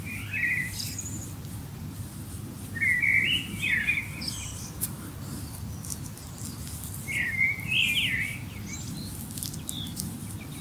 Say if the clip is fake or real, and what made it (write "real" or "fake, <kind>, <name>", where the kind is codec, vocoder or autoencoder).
real